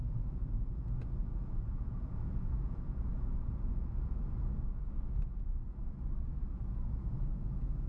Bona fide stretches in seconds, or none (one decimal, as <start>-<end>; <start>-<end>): 5.8-6.5